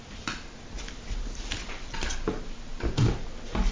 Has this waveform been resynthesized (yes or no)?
no